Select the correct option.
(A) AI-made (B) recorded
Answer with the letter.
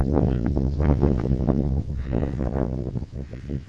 A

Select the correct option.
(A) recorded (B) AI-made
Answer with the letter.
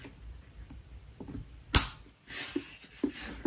A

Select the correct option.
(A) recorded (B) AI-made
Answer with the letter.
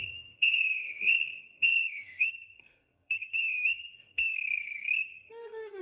B